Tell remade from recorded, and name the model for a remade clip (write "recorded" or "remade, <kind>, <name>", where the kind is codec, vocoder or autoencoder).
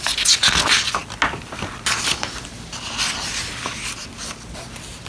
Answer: recorded